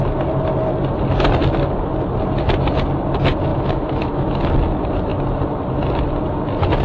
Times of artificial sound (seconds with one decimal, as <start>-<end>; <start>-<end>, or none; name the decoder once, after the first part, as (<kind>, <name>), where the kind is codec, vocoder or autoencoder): 3.5-4.4 (autoencoder, DAC-VAE)